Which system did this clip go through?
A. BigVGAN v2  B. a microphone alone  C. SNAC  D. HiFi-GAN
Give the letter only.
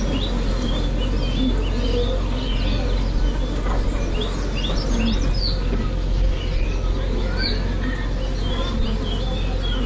B